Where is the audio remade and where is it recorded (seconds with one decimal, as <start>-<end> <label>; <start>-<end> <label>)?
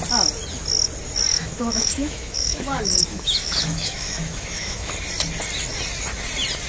0.0-1.3 recorded; 1.3-4.9 remade; 4.9-6.7 recorded